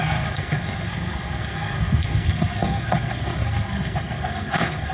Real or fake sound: fake